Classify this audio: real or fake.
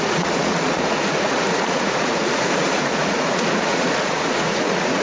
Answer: fake